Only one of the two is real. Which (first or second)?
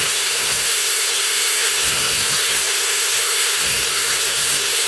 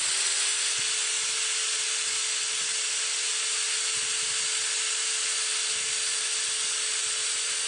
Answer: second